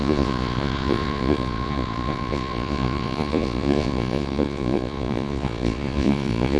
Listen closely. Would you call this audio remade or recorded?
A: remade